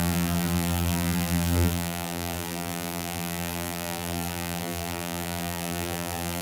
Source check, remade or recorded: remade